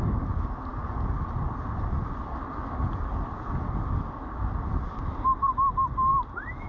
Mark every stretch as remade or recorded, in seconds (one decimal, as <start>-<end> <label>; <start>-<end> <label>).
0.0-6.7 recorded